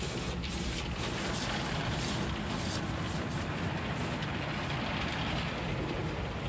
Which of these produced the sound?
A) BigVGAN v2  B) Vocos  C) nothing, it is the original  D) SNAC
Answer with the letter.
C